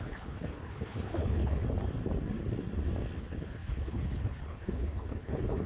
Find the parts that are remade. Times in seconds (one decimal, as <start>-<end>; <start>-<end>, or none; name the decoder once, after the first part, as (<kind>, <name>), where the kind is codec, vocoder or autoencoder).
0.0-1.6 (codec, HILCodec); 3.2-5.7